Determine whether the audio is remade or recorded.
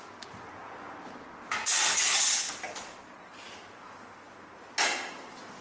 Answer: recorded